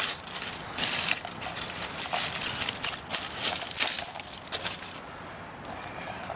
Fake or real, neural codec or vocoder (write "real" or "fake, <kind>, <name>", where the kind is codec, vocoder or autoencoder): real